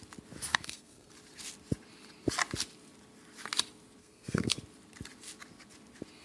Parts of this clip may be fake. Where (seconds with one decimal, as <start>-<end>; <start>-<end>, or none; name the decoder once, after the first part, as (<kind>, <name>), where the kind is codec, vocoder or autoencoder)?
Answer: 0.5-1.1 (codec, SNAC); 4.0-4.6